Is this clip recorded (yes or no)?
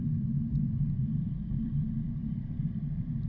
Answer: no